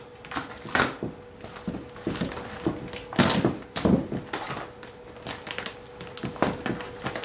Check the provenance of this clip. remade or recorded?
recorded